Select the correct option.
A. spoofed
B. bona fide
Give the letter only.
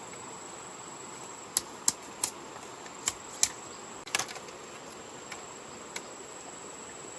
B